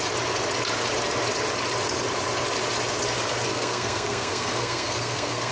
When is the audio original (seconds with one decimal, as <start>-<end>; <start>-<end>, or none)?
0.0-3.5